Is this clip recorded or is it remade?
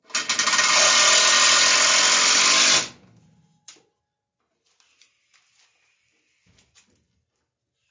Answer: recorded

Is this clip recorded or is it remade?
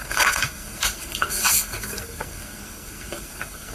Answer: remade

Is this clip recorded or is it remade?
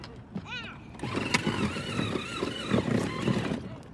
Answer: recorded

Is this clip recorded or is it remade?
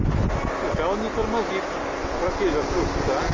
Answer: recorded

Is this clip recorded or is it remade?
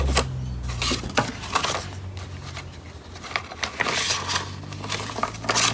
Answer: recorded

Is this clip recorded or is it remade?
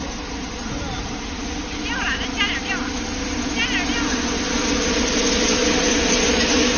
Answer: recorded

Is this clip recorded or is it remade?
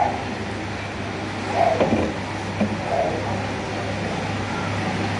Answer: recorded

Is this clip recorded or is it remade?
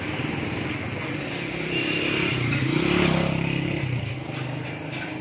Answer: recorded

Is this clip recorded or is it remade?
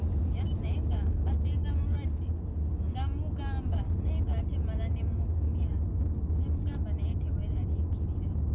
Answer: recorded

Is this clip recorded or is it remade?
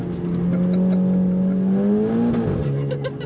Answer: recorded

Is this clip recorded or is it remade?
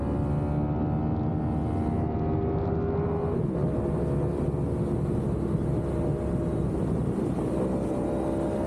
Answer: recorded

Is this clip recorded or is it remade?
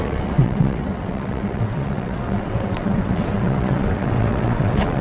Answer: remade